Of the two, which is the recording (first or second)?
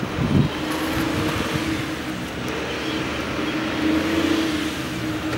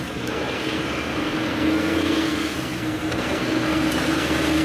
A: first